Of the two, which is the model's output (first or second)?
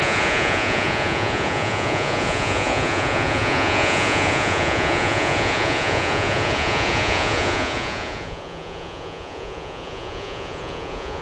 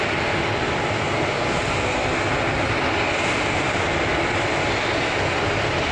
first